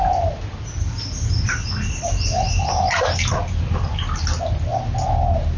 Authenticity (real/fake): real